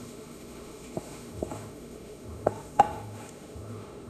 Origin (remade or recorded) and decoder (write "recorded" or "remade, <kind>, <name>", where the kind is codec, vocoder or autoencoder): remade, autoencoder, DAC-VAE